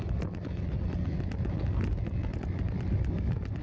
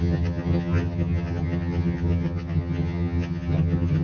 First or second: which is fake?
second